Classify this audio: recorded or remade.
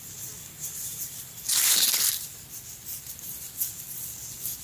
recorded